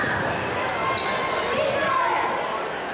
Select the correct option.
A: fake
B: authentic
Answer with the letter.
B